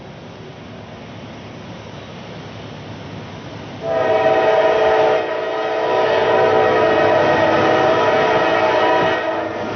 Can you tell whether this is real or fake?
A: real